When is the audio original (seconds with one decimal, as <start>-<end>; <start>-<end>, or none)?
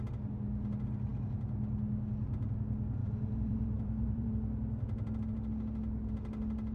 0.0-3.0; 4.3-6.7